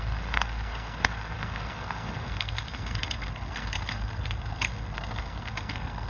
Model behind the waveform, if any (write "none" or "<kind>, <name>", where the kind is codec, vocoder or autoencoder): codec, SNAC